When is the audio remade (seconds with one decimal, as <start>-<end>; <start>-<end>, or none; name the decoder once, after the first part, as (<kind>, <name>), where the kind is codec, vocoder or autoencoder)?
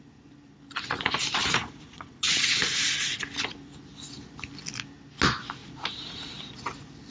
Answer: 1.4-3.2 (vocoder, Vocos); 5.6-6.3